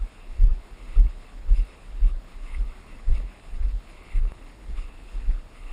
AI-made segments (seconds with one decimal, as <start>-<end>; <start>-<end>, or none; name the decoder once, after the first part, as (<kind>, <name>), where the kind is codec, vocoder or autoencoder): 0.0-5.7 (codec, HILCodec)